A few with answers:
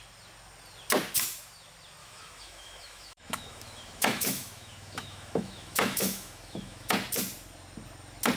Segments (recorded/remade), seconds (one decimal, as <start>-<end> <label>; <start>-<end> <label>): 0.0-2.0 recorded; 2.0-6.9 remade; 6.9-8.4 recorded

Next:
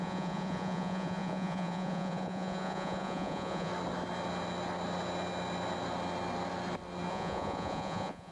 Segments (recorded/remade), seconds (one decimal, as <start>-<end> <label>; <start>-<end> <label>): 0.0-3.7 remade; 3.7-7.1 recorded; 7.1-8.3 remade

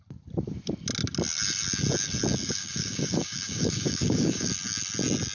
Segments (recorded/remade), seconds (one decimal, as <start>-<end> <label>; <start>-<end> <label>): 0.0-2.4 recorded; 2.4-4.5 remade; 4.5-5.3 recorded

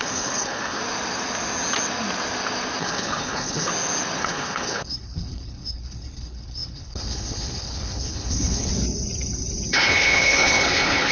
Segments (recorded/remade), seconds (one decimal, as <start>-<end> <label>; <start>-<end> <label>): 0.0-0.8 remade; 0.8-2.8 recorded; 2.8-3.7 remade; 3.7-4.2 recorded; 4.2-8.7 remade; 8.7-9.7 recorded; 9.7-11.1 remade

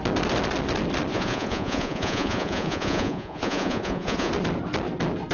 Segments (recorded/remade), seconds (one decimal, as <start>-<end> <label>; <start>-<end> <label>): 0.0-1.1 recorded; 1.1-4.3 remade; 4.3-5.3 recorded

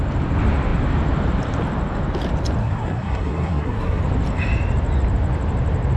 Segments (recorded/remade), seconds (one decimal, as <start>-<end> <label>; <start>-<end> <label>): 0.0-2.6 recorded; 2.6-4.0 remade; 4.0-6.0 recorded

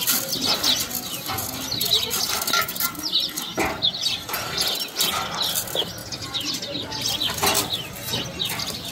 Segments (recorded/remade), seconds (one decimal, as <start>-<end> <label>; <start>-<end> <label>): 0.0-8.9 recorded

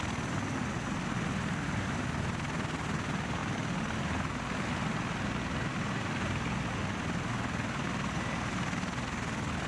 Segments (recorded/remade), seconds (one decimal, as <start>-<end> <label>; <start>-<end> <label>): 0.0-9.7 recorded